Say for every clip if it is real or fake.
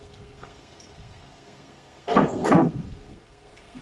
fake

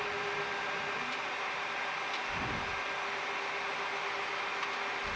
real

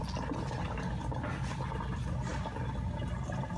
real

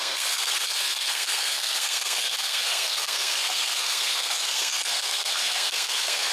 fake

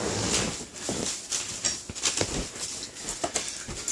real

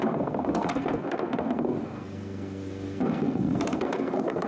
fake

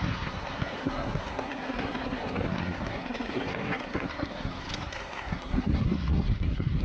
fake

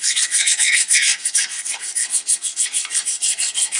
fake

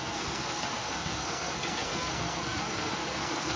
fake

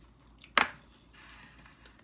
real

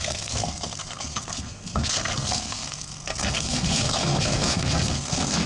fake